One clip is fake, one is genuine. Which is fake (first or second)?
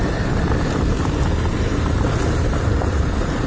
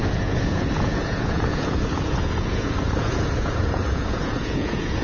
second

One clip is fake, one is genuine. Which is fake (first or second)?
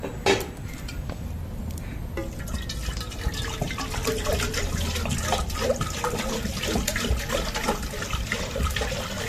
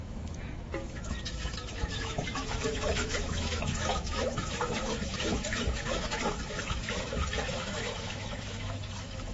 second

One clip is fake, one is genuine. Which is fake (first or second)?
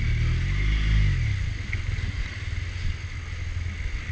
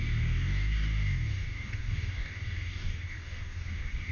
second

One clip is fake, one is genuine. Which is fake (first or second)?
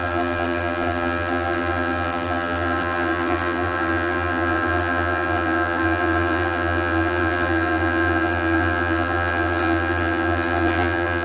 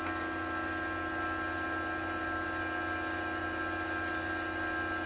first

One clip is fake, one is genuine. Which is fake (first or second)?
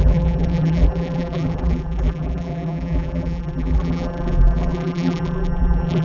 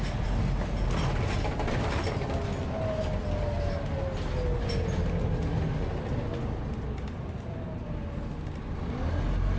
first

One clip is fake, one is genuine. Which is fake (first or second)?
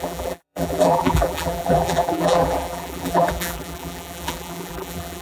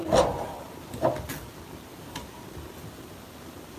first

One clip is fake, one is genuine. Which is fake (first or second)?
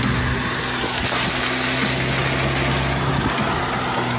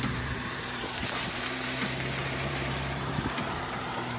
second